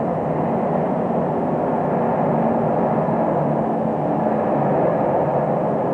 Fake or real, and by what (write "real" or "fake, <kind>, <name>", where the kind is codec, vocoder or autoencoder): real